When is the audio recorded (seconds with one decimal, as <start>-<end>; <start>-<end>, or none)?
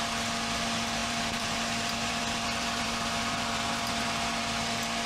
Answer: 0.0-1.0; 4.1-5.1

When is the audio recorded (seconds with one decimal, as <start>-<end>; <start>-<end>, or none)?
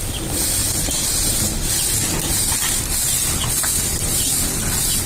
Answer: 0.0-5.1